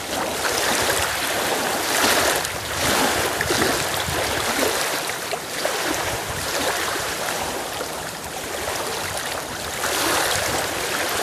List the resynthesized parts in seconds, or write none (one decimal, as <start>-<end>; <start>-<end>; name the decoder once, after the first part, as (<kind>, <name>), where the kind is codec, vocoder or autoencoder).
4.9-8.5 (vocoder, BigVGAN v2)